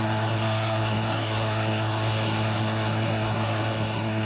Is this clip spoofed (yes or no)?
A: yes